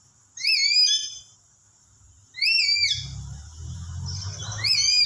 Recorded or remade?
recorded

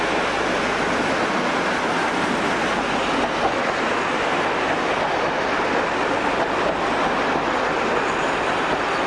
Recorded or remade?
recorded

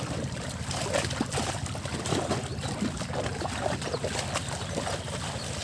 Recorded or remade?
recorded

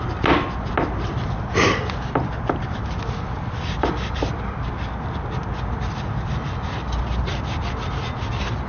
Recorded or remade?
recorded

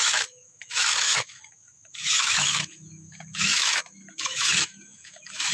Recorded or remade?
remade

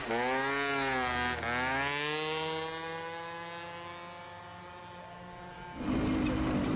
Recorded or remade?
recorded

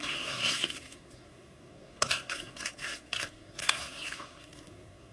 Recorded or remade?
remade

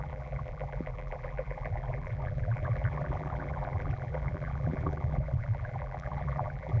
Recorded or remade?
remade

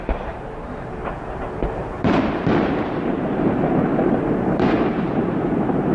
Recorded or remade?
remade